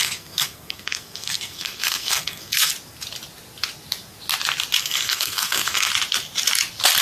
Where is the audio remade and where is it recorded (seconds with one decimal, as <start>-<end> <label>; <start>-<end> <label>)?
0.0-2.7 remade; 2.7-4.8 recorded; 4.8-5.9 remade; 5.9-7.0 recorded